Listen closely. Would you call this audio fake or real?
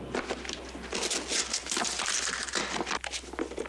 real